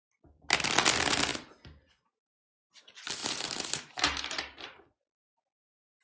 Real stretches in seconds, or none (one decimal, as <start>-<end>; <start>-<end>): 0.0-1.3; 2.8-3.2; 5.5-6.0